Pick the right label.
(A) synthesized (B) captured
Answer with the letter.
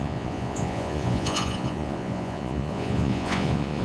A